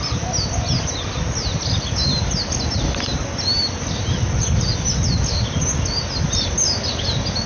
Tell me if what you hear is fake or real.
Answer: real